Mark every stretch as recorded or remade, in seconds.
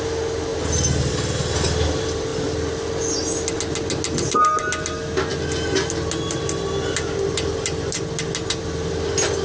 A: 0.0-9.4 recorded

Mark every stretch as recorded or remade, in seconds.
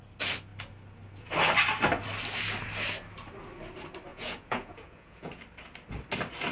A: 0.0-4.1 recorded; 4.1-5.4 remade; 5.4-6.5 recorded